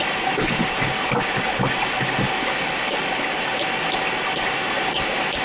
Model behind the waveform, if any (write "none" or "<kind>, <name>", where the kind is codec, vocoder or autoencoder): none